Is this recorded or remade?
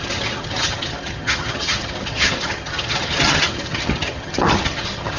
remade